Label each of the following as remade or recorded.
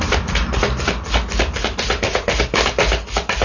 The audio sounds recorded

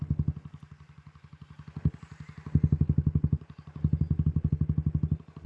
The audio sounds recorded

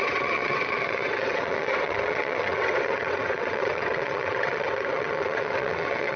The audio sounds remade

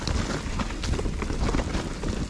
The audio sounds recorded